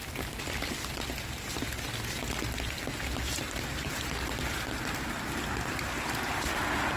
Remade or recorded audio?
recorded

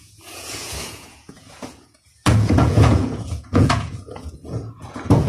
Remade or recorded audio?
remade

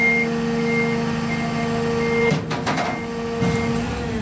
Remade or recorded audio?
recorded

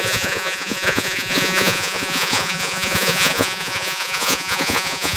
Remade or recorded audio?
remade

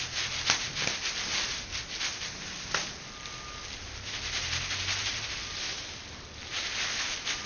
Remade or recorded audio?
recorded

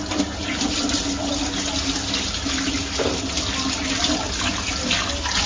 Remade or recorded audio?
recorded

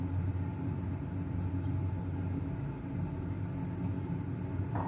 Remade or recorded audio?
recorded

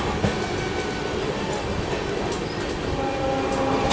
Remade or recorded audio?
recorded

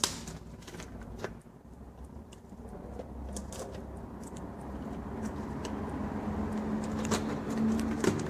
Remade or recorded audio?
recorded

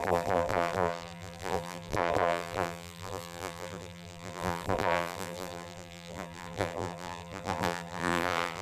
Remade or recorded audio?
remade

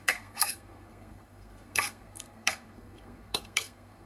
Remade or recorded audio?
remade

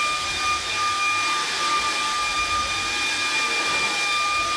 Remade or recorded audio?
recorded